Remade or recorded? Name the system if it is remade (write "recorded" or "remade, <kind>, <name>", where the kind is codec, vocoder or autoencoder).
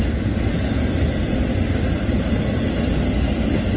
recorded